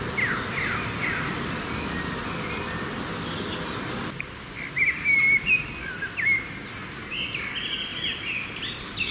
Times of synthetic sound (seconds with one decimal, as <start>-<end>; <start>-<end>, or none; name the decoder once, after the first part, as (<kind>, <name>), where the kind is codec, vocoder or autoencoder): 7.9-8.7 (vocoder, BigVGAN v2)